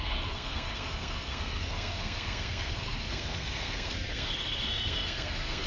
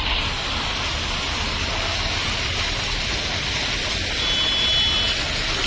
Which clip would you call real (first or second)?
second